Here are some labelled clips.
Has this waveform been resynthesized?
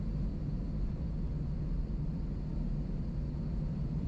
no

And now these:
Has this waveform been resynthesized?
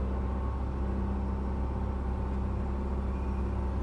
no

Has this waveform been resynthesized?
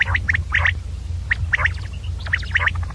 no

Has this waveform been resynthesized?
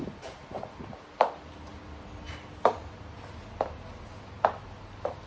no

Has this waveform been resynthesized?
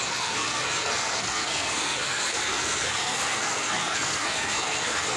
yes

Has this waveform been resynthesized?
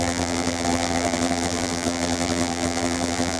yes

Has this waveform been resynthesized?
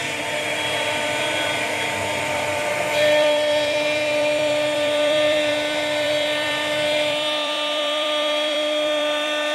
yes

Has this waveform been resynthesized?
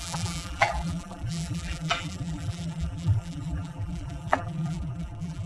yes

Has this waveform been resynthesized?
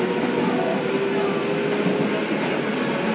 no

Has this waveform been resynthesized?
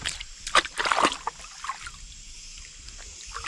no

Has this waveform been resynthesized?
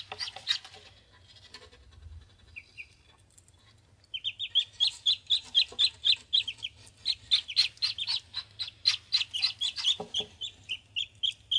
no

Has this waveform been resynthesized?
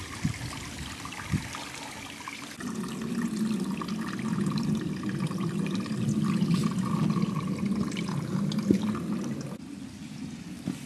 no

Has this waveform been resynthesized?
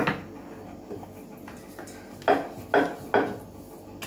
no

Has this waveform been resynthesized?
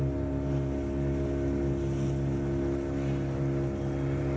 no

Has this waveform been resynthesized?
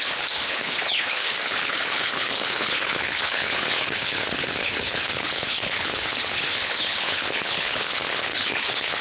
yes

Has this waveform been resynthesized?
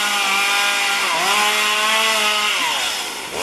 no